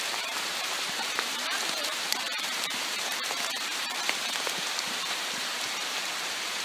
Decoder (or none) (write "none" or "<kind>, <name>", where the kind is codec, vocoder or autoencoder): vocoder, BigVGAN v2